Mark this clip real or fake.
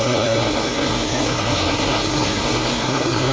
fake